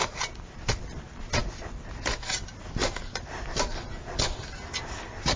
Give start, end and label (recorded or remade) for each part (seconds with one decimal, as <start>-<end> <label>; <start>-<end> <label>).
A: 0.0-0.8 remade; 0.8-5.4 recorded

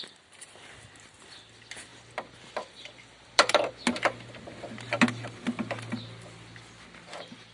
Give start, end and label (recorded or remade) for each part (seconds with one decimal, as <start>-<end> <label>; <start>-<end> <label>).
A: 0.0-1.9 recorded; 1.9-3.7 remade; 3.7-7.5 recorded

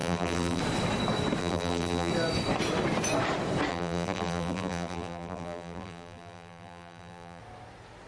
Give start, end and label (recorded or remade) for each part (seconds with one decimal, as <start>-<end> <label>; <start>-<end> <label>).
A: 0.0-0.6 remade; 0.6-1.4 recorded; 1.4-2.1 remade; 2.1-3.7 recorded; 3.7-7.4 remade; 7.4-8.1 recorded

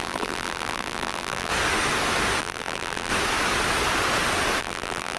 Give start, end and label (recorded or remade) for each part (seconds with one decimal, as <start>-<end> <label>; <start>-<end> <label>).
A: 0.0-1.5 remade; 1.5-2.4 recorded; 2.4-3.1 remade; 3.1-4.6 recorded; 4.6-5.2 remade

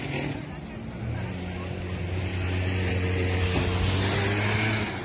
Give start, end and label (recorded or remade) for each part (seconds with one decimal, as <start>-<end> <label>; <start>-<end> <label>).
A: 0.0-5.0 recorded

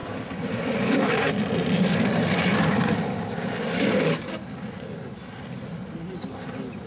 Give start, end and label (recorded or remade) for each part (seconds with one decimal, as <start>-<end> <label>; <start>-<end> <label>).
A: 0.0-3.3 remade; 3.3-6.9 recorded